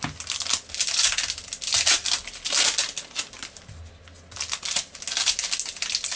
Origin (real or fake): real